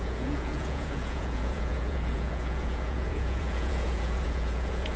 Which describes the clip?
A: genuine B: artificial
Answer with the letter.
B